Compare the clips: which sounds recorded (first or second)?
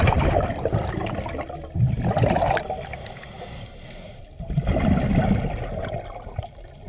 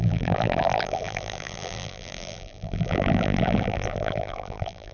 first